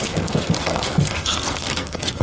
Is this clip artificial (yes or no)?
yes